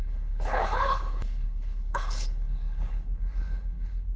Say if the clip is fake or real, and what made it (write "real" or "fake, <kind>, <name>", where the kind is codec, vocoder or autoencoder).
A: fake, codec, HILCodec